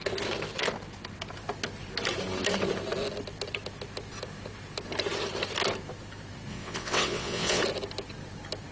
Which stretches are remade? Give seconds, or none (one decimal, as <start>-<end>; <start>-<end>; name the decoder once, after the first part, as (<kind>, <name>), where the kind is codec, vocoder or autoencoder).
6.5-7.6 (vocoder, WaveNeXt)